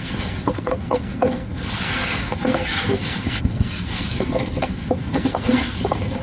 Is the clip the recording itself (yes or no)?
no